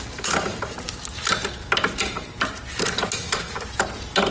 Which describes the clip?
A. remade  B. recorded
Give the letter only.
B